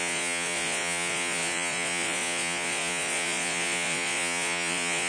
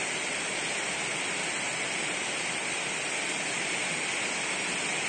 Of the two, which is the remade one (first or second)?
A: first